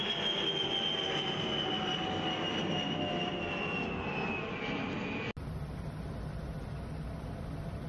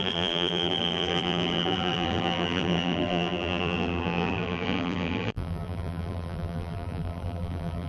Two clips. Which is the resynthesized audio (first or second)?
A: second